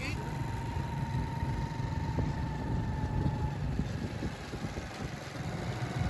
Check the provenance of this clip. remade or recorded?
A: recorded